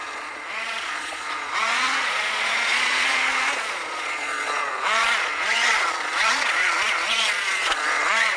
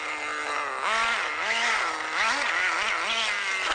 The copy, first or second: first